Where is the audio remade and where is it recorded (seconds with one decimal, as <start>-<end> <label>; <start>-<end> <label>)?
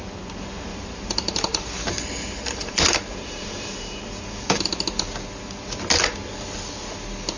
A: 0.0-0.7 recorded; 0.7-4.7 remade; 4.7-7.4 recorded